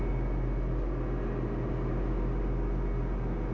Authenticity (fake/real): real